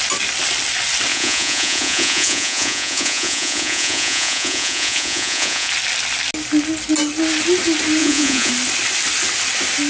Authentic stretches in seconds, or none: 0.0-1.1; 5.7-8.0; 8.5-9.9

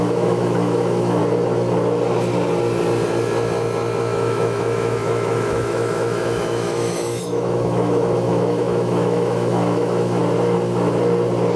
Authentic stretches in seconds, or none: 1.2-4.0; 10.2-11.6

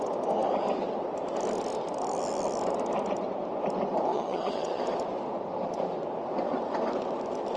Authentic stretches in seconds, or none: 0.0-4.1; 4.8-7.6

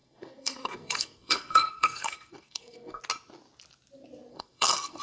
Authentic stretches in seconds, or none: 3.0-4.3

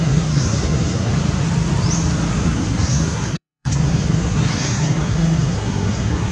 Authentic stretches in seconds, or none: 1.1-2.3

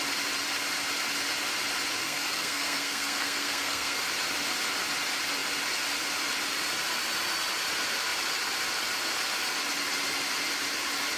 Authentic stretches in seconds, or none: 0.0-2.0; 4.0-11.2

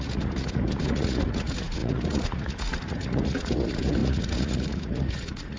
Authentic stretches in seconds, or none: none